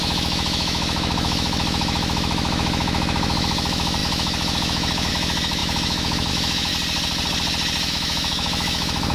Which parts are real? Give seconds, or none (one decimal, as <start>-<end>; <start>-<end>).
6.7-7.9